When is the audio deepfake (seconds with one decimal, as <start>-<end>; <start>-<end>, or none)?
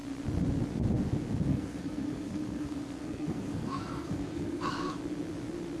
1.5-5.0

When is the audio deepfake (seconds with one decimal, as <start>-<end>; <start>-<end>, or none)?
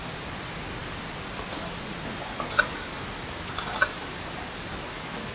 none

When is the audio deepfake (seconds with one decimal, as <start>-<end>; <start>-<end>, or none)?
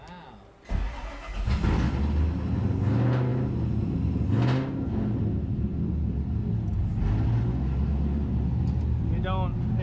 none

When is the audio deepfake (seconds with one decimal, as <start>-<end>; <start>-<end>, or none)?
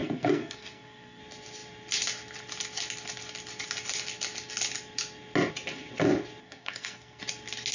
0.0-1.2; 6.4-7.2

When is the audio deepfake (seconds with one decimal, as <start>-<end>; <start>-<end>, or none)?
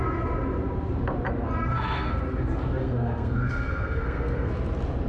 1.7-2.2; 2.8-4.5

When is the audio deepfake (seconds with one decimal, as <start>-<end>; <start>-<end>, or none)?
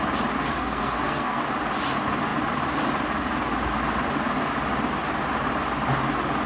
0.5-1.4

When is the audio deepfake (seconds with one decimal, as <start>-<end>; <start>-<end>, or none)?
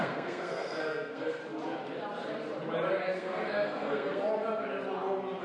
0.0-1.4; 3.0-4.2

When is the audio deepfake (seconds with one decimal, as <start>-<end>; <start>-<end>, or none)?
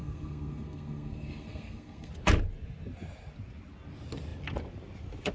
0.0-2.1